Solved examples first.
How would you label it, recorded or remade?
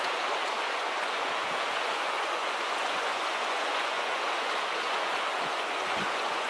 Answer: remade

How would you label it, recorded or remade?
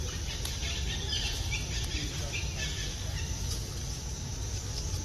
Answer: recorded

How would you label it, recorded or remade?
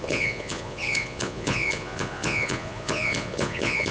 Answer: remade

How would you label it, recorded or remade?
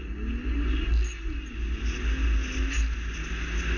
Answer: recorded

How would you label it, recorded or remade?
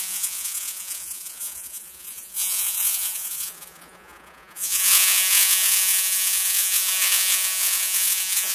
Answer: remade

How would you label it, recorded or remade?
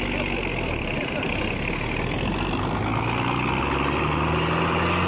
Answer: recorded